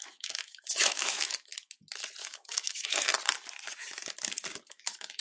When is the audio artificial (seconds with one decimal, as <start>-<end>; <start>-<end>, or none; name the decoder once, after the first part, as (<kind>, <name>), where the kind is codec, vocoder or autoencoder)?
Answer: 0.0-1.5 (autoencoder, DAC-VAE); 2.2-3.1; 4.7-5.2

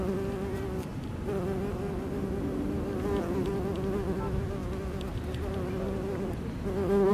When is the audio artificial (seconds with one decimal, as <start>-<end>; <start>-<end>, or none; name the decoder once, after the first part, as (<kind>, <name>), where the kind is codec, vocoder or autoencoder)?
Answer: none

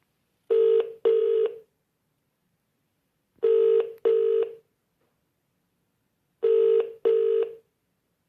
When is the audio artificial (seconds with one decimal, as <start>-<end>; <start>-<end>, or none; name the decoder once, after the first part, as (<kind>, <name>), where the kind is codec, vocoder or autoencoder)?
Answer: 1.2-2.6 (vocoder, BigVGAN v2)

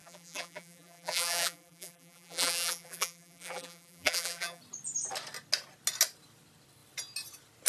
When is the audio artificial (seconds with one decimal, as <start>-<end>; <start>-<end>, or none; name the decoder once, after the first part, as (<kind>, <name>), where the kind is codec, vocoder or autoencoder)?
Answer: 0.0-4.6 (vocoder, BigVGAN v2)